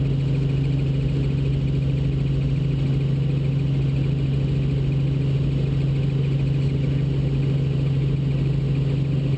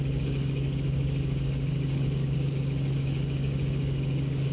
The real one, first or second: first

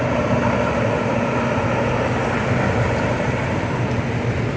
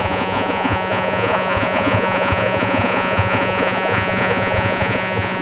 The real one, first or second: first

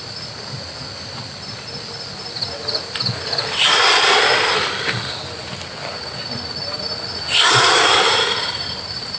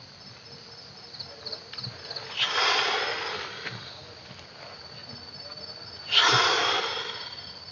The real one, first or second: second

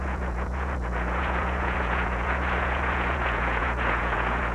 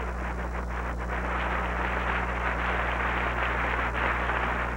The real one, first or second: second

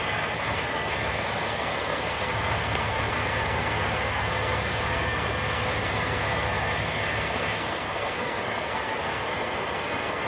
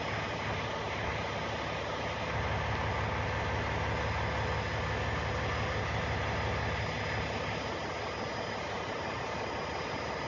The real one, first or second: second